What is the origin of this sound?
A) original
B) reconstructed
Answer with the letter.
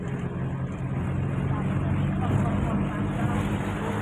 A